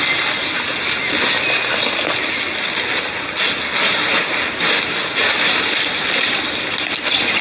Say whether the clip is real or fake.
real